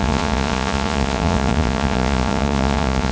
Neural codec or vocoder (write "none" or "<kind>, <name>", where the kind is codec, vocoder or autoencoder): vocoder, Vocos